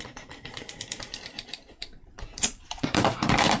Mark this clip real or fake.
fake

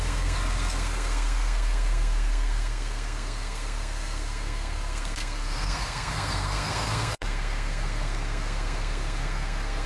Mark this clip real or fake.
fake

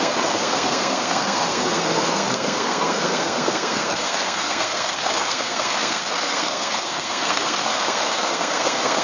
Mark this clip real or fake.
fake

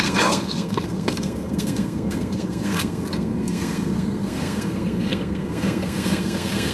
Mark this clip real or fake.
fake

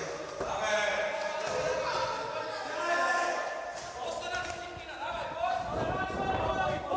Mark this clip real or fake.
real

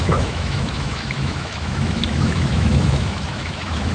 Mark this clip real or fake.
fake